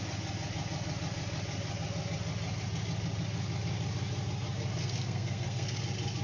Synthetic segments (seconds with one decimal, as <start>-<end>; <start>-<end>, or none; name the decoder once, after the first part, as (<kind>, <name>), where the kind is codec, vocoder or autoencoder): 4.8-5.8 (codec, SNAC)